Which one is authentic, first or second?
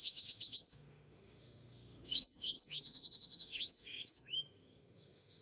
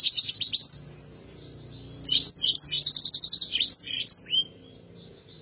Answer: second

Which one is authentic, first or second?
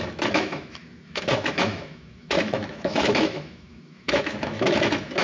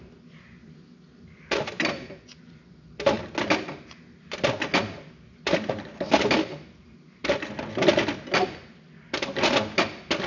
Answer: second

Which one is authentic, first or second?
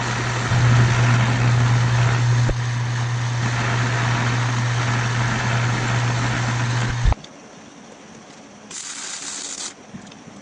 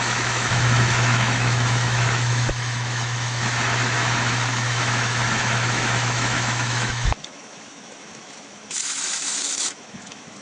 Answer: first